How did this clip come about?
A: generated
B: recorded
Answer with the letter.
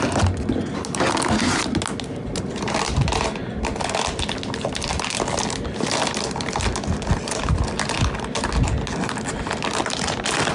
B